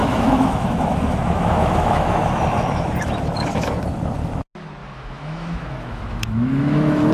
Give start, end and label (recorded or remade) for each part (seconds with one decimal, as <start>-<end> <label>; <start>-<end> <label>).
0.0-3.8 remade; 3.8-4.8 recorded; 4.8-7.1 remade